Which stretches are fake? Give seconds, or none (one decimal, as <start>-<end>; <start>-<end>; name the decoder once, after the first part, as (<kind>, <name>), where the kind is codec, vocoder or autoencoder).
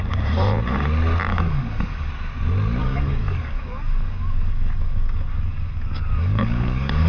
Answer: 1.3-2.1 (codec, DAC); 2.8-7.1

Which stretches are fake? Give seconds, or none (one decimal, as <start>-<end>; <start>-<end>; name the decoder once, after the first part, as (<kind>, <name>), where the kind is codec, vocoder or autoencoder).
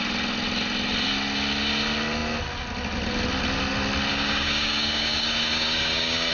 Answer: 4.1-6.3 (codec, DAC)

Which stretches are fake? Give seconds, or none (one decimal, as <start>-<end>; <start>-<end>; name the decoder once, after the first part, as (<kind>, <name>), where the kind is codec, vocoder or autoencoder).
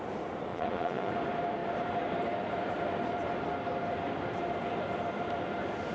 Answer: 0.5-1.1 (vocoder, Vocos)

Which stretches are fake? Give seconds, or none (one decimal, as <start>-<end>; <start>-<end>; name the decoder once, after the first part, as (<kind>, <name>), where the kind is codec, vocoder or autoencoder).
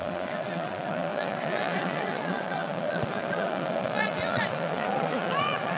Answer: 0.0-5.8 (vocoder, Vocos)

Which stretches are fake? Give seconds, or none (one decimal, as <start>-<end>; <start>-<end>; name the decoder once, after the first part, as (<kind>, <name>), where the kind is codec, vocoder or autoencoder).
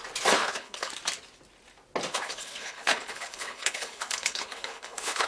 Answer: 0.4-0.9 (codec, HILCodec); 2.1-5.3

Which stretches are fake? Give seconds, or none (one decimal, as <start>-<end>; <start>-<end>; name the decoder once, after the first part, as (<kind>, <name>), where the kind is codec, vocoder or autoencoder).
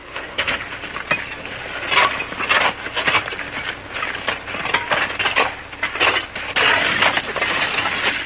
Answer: 0.0-0.6 (codec, SNAC)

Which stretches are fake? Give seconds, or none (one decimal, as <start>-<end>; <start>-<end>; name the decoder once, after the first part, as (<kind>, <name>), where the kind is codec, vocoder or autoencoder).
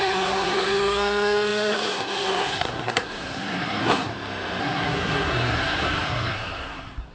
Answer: 0.0-4.1 (codec, SNAC); 4.6-7.1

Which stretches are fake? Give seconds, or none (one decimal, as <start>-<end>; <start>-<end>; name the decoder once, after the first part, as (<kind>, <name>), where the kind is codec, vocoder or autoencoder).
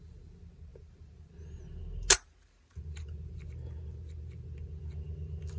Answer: none